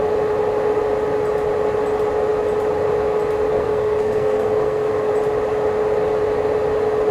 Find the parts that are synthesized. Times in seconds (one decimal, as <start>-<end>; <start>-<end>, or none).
3.5-5.1